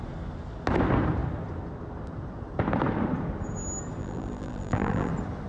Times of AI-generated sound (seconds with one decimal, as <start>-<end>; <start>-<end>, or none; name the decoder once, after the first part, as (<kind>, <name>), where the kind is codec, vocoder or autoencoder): 4.0-5.1 (vocoder, BigVGAN v2)